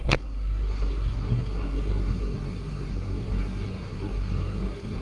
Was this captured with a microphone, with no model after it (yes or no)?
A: no